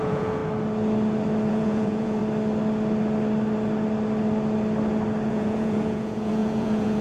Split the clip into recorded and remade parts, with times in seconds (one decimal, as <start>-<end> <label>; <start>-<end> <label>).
0.0-0.4 remade; 0.4-1.5 recorded; 1.5-2.2 remade; 2.2-5.3 recorded; 5.3-7.0 remade